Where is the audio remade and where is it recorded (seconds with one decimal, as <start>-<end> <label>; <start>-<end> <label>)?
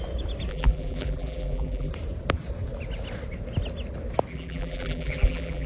0.0-0.5 recorded; 0.5-1.9 remade; 1.9-4.3 recorded; 4.3-5.7 remade